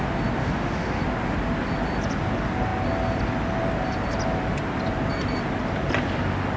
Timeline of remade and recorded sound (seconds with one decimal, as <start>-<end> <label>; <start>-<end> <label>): 0.0-0.4 recorded; 0.4-1.0 remade; 1.0-6.6 recorded